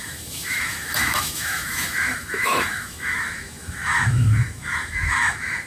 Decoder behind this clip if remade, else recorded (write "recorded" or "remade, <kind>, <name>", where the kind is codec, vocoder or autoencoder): remade, autoencoder, DAC-VAE